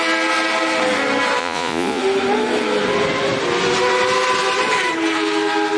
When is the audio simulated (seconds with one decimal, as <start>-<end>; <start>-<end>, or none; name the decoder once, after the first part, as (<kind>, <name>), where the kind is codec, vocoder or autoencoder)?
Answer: 1.4-2.0 (vocoder, Vocos)